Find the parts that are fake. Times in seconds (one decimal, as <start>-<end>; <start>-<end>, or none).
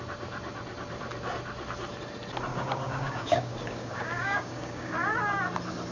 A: 2.5-4.9